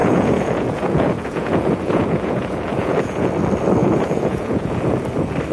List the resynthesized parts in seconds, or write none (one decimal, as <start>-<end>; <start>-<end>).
0.0-3.3; 3.8-5.0